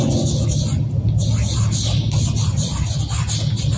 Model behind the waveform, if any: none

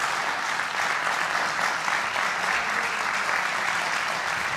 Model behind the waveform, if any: none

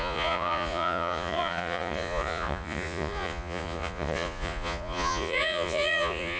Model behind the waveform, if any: vocoder, Vocos